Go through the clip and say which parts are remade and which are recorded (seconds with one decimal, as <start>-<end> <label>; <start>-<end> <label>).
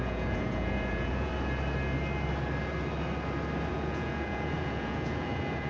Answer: 0.0-1.3 remade; 1.3-3.7 recorded; 3.7-5.7 remade